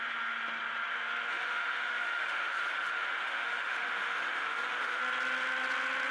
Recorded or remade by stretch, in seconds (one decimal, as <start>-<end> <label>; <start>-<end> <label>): 0.0-1.3 recorded; 1.3-5.0 remade; 5.0-6.1 recorded